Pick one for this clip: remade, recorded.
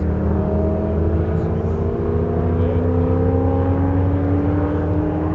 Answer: recorded